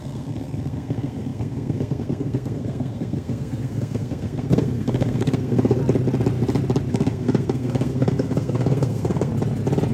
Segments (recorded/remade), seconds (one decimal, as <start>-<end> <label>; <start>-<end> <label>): 0.0-5.8 remade; 5.8-6.9 recorded; 6.9-9.3 remade; 9.3-9.9 recorded